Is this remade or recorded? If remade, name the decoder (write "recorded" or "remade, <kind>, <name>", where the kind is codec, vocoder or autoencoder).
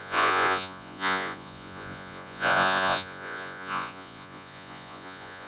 remade, vocoder, Vocos